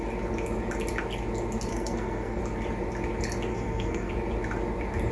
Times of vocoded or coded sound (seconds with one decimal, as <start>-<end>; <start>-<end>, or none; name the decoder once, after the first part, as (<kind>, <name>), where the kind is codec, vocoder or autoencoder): 1.7-2.4 (codec, SNAC); 3.5-4.1